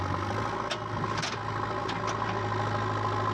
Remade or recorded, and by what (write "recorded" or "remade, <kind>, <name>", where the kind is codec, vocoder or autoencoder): recorded